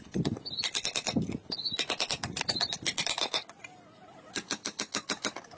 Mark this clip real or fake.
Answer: real